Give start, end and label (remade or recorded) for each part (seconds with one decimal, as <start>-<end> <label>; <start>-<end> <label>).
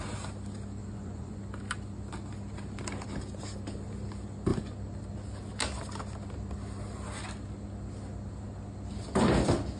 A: 0.0-0.8 recorded; 0.8-1.4 remade; 1.4-9.8 recorded